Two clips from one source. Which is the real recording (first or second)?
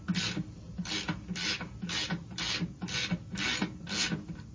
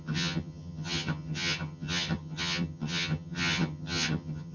first